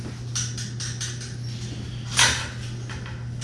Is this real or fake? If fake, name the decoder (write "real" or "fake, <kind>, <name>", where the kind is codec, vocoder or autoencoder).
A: real